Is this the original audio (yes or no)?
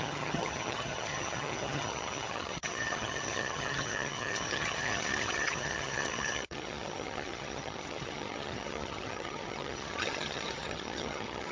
no